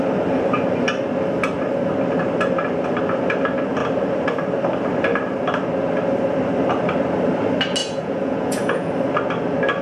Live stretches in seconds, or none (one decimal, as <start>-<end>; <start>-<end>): 0.0-7.8; 8.9-9.8